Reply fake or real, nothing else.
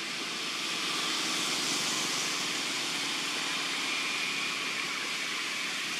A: real